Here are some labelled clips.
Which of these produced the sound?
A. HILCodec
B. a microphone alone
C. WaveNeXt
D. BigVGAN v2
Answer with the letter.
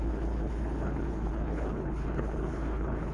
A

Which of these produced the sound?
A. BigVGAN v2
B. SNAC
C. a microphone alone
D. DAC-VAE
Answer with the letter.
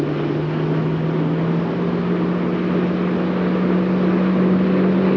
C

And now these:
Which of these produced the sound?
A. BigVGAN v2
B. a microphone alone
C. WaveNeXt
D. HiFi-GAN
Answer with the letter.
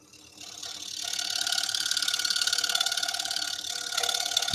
B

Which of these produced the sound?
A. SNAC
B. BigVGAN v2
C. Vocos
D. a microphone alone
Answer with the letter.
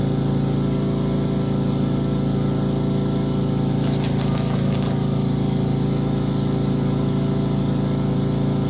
D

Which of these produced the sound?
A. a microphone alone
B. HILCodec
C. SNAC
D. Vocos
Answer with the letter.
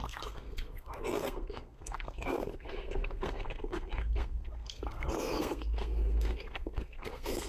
C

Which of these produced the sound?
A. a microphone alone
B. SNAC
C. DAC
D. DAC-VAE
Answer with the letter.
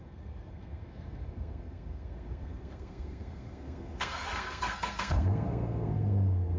B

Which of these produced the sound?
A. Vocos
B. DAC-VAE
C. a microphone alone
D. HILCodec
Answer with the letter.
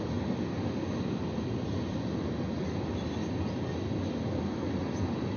C